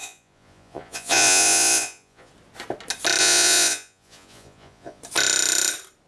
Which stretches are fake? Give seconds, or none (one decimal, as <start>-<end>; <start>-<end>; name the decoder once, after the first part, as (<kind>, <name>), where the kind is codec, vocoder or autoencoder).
0.0-2.3 (vocoder, Vocos); 3.2-5.0